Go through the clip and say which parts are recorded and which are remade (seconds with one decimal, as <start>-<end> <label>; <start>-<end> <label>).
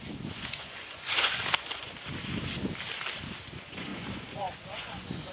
0.0-1.9 remade; 1.9-3.5 recorded; 3.5-5.3 remade